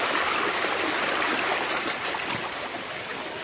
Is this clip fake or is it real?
fake